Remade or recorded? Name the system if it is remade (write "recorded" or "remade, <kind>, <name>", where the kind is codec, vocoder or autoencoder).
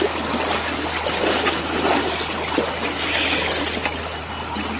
recorded